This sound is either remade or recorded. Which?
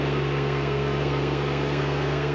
remade